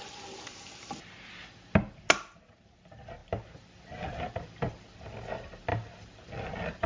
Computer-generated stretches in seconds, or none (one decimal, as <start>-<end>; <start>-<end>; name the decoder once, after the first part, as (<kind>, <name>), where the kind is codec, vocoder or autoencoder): none